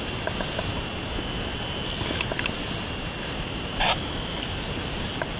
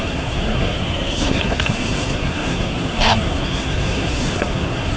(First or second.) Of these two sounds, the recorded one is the first